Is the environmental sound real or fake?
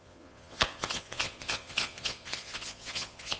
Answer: fake